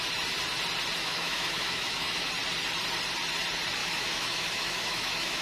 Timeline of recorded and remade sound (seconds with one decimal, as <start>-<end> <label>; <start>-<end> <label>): 0.0-1.0 recorded; 1.0-2.3 remade; 2.3-3.8 recorded; 3.8-5.4 remade